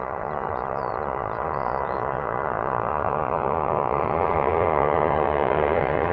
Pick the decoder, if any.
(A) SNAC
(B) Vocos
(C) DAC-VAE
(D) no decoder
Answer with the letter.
B